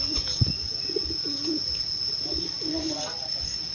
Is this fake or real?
real